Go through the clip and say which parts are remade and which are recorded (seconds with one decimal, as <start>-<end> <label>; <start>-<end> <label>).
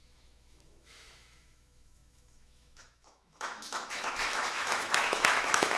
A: 0.0-5.8 remade